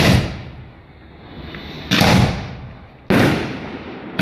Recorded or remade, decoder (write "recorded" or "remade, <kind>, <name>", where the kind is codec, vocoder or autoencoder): recorded